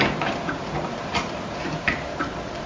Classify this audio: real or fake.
fake